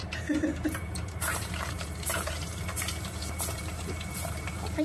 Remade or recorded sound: remade